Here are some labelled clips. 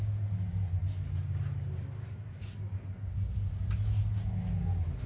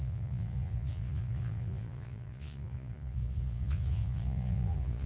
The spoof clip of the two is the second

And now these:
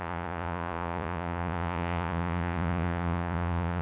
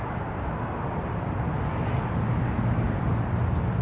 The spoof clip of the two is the first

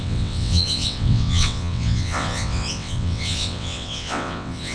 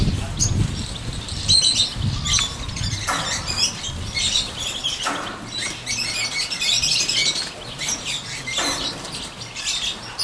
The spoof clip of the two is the first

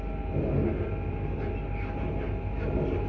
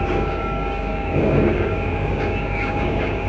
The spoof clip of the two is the second